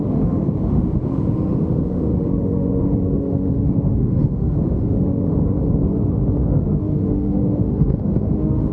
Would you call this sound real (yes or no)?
no